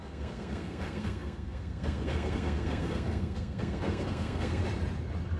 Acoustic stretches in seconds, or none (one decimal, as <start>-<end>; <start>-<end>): 4.6-5.4